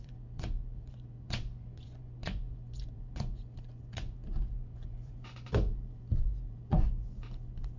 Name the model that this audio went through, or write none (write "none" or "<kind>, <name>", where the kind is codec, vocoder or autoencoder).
vocoder, Vocos